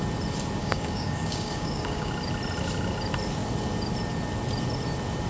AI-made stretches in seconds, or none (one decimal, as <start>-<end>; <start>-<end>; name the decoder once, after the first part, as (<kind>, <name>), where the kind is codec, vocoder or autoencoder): 0.6-2.1 (codec, DAC)